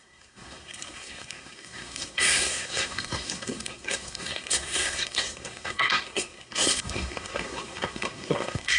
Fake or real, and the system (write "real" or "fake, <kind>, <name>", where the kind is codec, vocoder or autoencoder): fake, codec, SNAC